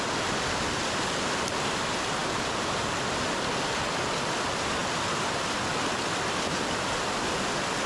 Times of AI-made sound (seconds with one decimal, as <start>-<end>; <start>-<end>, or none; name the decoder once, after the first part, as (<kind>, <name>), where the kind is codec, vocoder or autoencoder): none